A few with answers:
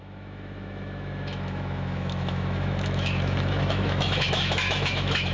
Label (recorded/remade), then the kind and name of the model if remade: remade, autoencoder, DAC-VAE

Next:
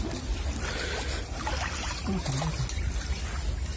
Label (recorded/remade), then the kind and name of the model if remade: recorded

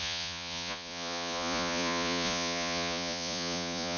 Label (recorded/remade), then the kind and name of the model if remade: remade, vocoder, Vocos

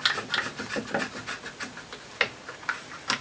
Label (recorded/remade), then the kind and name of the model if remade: recorded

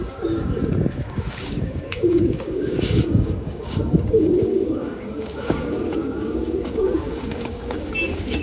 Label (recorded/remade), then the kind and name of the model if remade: remade, codec, DAC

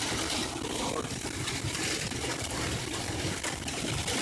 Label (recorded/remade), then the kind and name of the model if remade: remade, vocoder, BigVGAN v2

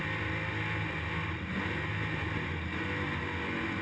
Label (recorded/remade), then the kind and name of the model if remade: recorded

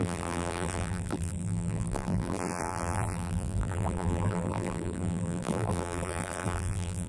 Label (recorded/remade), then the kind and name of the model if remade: remade, vocoder, BigVGAN v2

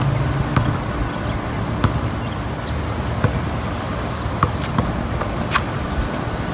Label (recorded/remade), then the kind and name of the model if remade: recorded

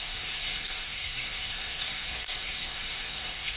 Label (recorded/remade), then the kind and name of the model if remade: remade, codec, SNAC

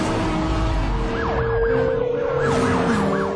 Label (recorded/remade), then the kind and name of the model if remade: recorded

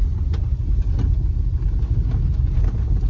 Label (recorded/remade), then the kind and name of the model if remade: recorded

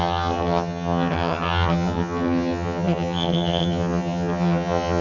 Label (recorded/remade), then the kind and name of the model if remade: remade, vocoder, HiFi-GAN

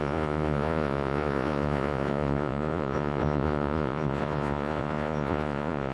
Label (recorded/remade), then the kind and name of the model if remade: remade, vocoder, Vocos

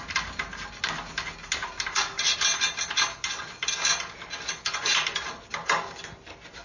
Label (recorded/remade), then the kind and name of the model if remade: recorded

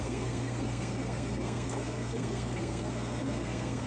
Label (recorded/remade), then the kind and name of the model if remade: remade, codec, SNAC